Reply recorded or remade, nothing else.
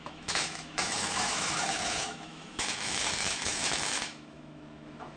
remade